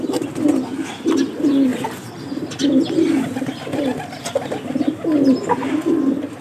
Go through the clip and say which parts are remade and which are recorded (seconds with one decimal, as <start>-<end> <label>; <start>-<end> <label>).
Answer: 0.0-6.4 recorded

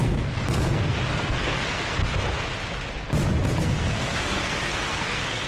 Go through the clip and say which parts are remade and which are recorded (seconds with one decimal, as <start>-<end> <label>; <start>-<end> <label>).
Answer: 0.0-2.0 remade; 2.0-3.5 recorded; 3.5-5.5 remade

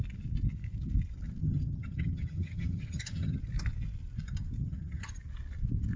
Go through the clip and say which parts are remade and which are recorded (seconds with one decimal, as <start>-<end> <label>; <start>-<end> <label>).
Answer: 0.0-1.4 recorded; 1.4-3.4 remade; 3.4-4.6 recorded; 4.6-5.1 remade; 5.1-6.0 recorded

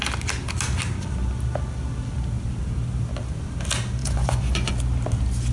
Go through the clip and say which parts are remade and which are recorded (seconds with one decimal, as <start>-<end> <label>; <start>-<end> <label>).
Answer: 0.0-4.0 recorded; 4.0-4.7 remade; 4.7-5.5 recorded

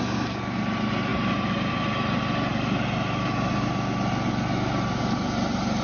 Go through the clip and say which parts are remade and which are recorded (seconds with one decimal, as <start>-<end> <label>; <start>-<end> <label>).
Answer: 0.0-1.1 recorded; 1.1-1.7 remade; 1.7-2.5 recorded; 2.5-3.5 remade; 3.5-5.8 recorded

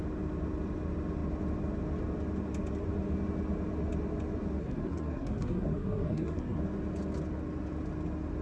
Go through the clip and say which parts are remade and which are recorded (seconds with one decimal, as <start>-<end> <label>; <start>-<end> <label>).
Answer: 0.0-4.6 recorded; 4.6-6.6 remade; 6.6-8.4 recorded

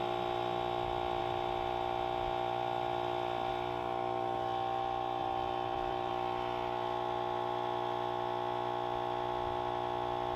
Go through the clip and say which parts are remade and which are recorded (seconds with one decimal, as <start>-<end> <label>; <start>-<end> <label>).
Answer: 0.0-5.2 recorded; 5.2-6.1 remade; 6.1-10.4 recorded

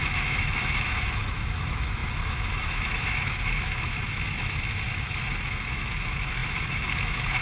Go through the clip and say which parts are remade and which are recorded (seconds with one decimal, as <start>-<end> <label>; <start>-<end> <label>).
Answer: 0.0-7.4 remade